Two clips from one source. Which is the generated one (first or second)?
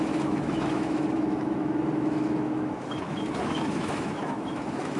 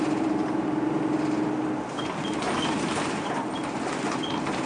first